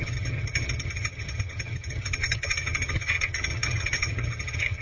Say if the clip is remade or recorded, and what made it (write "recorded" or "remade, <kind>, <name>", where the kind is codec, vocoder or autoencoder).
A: remade, vocoder, HiFi-GAN